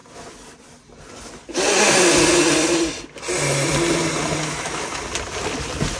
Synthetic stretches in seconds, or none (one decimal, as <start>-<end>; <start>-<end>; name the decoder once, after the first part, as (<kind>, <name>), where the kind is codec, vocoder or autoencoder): 4.4-5.0 (autoencoder, DAC-VAE)